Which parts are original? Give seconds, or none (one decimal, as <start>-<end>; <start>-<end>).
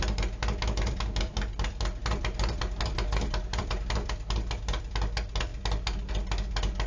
0.0-6.9